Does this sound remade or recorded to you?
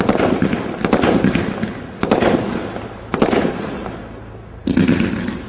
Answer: recorded